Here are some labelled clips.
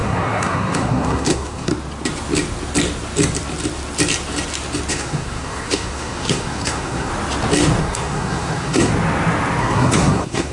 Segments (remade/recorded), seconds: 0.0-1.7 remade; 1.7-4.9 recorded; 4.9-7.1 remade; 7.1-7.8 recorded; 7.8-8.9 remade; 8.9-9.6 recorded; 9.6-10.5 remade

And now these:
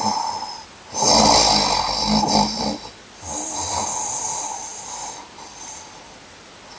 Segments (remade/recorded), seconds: 0.0-6.8 recorded